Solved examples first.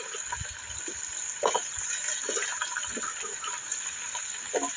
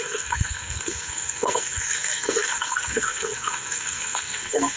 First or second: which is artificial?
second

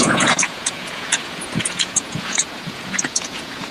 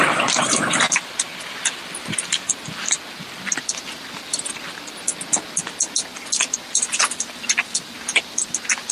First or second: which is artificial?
first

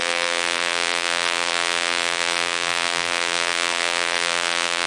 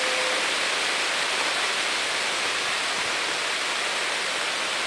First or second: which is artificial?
first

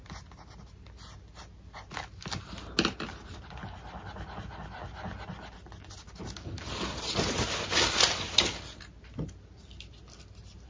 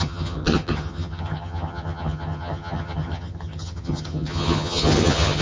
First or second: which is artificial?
second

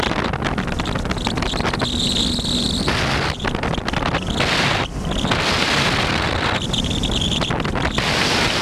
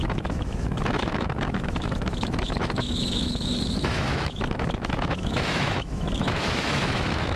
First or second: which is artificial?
second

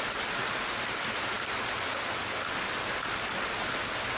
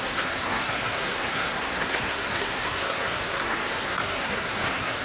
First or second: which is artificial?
second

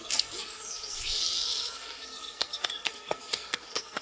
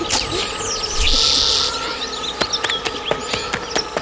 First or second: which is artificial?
first